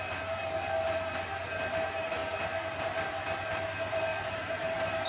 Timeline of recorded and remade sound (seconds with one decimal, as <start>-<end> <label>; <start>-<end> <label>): 0.0-5.1 recorded